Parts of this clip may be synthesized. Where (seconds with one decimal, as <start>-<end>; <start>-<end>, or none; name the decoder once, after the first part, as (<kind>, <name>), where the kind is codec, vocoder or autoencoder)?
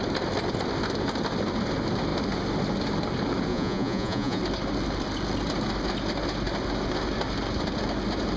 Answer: 3.5-4.4 (vocoder, Vocos)